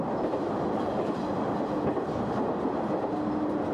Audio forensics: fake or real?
real